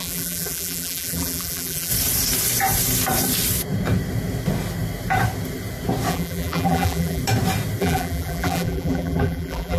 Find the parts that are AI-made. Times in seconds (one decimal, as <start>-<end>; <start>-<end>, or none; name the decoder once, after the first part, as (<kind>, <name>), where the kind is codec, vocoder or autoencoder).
0.0-1.9 (vocoder, BigVGAN v2); 6.1-7.2; 7.8-9.8